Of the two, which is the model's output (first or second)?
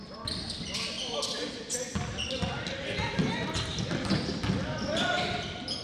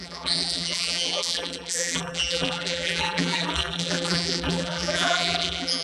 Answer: second